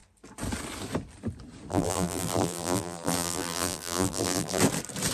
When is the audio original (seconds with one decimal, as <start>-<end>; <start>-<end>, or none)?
0.0-1.7; 4.6-5.1